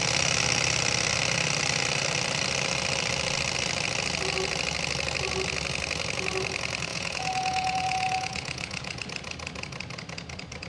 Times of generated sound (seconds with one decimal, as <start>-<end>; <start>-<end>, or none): 6.9-9.0